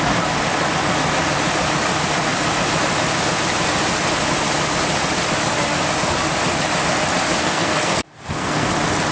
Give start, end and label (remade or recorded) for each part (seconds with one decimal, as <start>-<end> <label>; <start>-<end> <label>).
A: 0.0-7.4 recorded; 7.4-8.7 remade; 8.7-9.1 recorded